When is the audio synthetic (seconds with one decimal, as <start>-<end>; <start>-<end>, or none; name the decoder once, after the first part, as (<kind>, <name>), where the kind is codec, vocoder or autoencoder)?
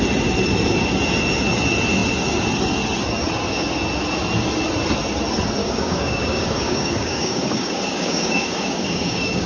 5.6-9.5 (codec, DAC)